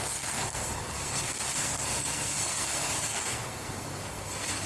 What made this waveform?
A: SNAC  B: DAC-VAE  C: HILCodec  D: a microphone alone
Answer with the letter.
A